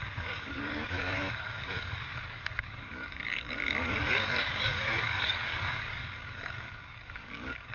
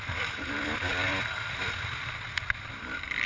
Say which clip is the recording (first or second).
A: second